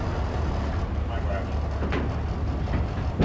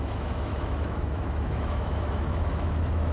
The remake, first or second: second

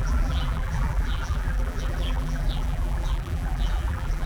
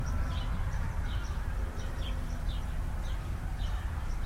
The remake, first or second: first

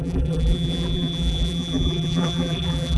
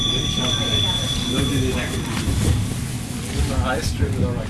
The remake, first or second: first